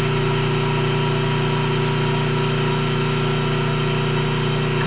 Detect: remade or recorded recorded